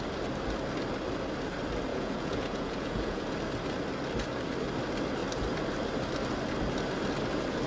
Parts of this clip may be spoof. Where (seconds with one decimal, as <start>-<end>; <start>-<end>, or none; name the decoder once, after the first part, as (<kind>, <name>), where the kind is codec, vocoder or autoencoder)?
1.9-3.3 (vocoder, Vocos)

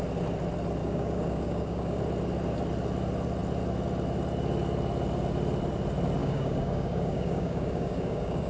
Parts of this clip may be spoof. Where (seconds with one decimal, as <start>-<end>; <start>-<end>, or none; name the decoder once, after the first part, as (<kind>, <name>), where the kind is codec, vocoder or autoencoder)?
0.8-2.0 (codec, DAC); 6.2-8.5

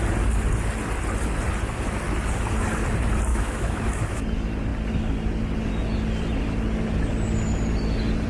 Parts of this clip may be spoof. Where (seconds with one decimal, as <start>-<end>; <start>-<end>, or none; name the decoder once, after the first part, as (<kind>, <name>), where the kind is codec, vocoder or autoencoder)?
3.3-4.2 (autoencoder, DAC-VAE)

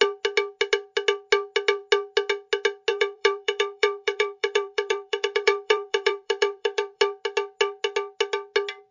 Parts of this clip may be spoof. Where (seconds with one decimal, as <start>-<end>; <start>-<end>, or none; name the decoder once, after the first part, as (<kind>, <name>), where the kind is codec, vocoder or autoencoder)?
2.9-7.0 (vocoder, BigVGAN v2)

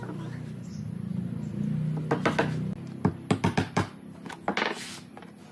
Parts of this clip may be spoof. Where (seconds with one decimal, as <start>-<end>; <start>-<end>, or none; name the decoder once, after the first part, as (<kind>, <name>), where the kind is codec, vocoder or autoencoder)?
none

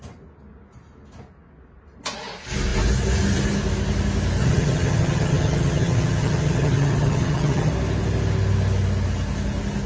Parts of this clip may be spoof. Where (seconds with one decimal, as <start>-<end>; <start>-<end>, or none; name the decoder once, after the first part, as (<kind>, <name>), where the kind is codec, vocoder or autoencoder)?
4.4-7.7 (vocoder, HiFi-GAN)

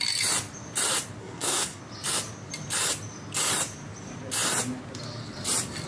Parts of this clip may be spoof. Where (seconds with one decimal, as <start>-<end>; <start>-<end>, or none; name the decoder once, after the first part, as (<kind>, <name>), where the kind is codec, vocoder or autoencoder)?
1.2-1.8 (codec, SNAC)